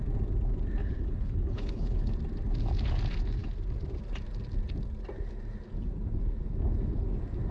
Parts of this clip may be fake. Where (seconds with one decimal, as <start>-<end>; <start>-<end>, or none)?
0.8-2.1